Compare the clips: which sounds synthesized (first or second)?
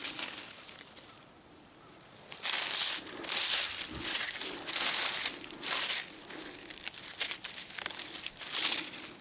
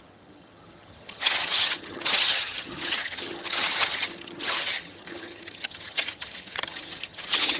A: second